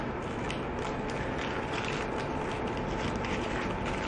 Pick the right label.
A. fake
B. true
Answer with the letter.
B